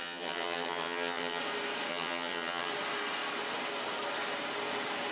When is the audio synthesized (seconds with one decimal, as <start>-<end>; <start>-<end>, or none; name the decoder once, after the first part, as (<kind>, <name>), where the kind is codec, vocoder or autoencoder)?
0.0-1.4 (vocoder, HiFi-GAN); 1.9-2.7